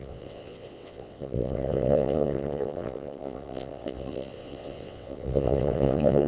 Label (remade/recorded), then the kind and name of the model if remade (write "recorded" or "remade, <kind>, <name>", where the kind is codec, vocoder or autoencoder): remade, vocoder, WaveNeXt